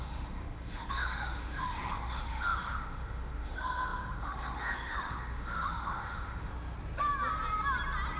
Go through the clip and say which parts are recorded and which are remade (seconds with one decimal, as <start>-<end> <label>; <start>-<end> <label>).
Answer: 0.0-6.5 remade; 6.5-8.2 recorded